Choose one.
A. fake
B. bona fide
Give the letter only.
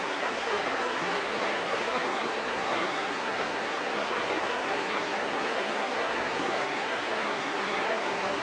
A